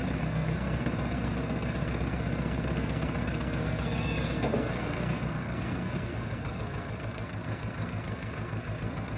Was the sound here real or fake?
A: fake